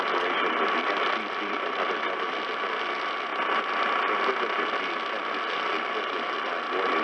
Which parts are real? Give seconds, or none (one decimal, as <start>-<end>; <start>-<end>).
0.0-7.0

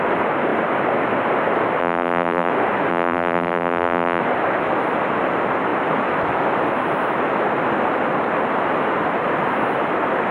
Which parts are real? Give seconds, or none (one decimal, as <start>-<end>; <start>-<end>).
0.0-1.8; 2.5-2.9; 4.2-10.3

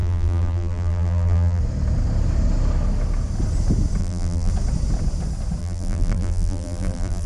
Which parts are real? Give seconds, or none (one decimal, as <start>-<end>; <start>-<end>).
1.6-4.0; 4.5-5.6

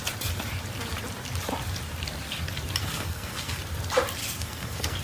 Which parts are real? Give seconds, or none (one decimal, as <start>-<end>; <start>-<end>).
0.0-2.8; 3.6-4.2

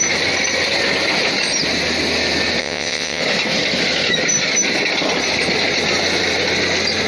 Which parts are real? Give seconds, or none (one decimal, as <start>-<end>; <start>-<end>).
0.0-2.6; 3.2-7.1

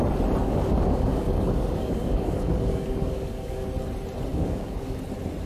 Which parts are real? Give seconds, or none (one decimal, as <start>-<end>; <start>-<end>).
0.0-0.4; 3.7-4.3; 5.0-5.5